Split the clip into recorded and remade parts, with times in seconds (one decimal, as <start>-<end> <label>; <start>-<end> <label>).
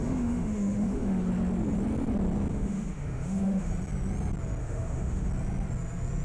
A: 0.0-1.3 remade; 1.3-2.5 recorded; 2.5-3.7 remade; 3.7-4.6 recorded; 4.6-5.3 remade; 5.3-6.2 recorded